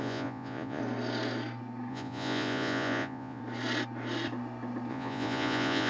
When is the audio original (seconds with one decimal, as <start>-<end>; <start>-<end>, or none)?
0.8-1.9; 3.4-4.9